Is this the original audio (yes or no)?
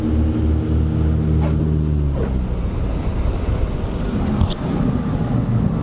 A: yes